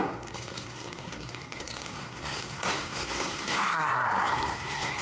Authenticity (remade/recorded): remade